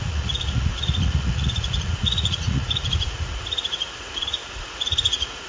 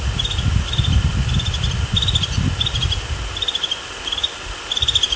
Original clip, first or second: second